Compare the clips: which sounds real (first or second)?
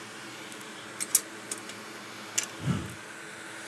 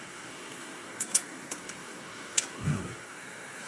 first